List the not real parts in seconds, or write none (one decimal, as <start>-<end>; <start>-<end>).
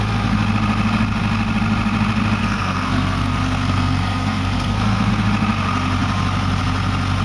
2.4-5.1